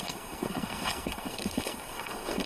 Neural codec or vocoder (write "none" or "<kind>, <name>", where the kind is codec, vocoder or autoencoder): codec, SNAC